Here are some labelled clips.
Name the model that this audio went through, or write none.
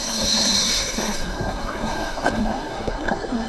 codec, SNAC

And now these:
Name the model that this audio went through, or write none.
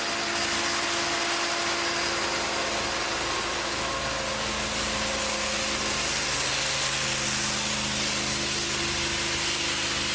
none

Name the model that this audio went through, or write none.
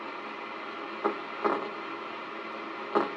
none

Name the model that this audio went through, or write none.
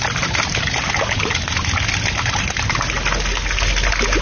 none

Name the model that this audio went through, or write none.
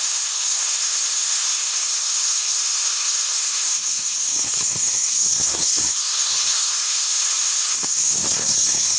codec, SNAC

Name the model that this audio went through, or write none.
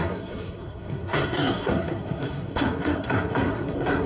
codec, SNAC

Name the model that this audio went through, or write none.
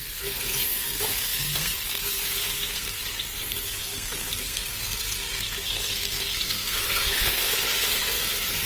codec, SNAC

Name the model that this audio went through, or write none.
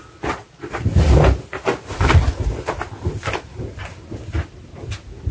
none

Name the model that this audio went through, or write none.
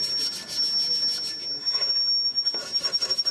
none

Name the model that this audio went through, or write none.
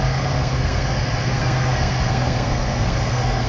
codec, SNAC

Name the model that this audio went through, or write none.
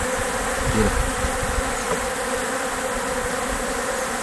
none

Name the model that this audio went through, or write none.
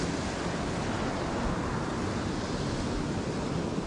none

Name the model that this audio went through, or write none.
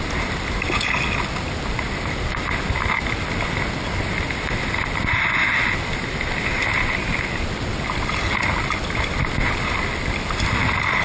none